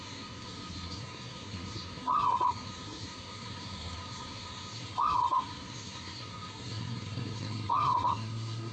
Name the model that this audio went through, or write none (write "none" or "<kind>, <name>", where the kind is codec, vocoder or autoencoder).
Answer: codec, SNAC